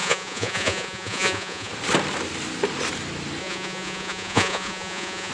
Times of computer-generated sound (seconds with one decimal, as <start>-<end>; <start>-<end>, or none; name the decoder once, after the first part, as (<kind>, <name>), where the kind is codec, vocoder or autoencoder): 0.0-1.7 (vocoder, Vocos); 3.4-5.3